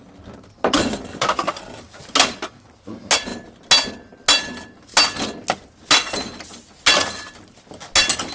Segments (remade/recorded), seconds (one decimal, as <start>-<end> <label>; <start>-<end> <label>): 0.0-8.3 recorded